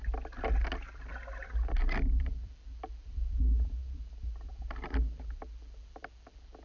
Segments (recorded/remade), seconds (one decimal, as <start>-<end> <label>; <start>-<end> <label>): 0.0-3.8 recorded; 3.8-4.5 remade; 4.5-6.6 recorded